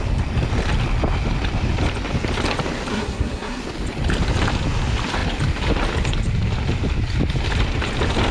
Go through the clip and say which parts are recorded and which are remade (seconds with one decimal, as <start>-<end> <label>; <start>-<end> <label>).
0.0-2.9 recorded; 2.9-3.6 remade; 3.6-8.3 recorded